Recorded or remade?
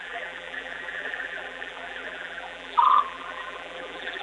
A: remade